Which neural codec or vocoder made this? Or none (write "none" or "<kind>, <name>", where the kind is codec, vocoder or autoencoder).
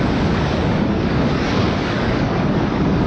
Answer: codec, DAC